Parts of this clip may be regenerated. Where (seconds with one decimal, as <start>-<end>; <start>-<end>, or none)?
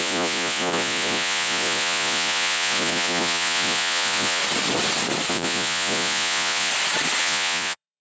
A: 0.0-4.4; 5.3-6.7; 7.2-8.0